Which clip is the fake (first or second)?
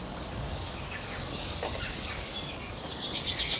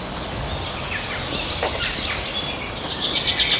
first